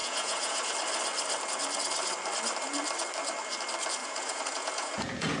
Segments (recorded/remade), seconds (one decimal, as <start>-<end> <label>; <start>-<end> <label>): 0.0-0.7 remade; 0.7-4.0 recorded; 4.0-5.4 remade